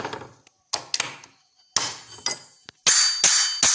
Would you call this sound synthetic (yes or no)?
no